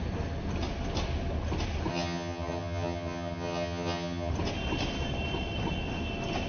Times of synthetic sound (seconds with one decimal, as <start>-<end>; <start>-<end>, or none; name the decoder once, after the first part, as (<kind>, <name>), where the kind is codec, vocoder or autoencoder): 1.9-4.3 (vocoder, HiFi-GAN)